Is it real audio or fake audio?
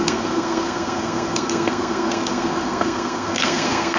fake